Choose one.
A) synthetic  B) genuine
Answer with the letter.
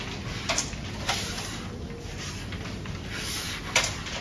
B